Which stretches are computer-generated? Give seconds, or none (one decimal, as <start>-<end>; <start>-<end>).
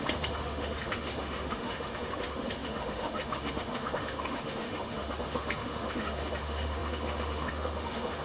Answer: 0.0-8.2